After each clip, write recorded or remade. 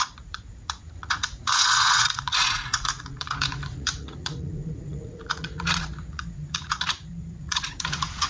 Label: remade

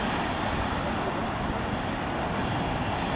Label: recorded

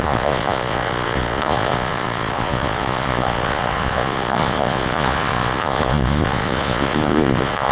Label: remade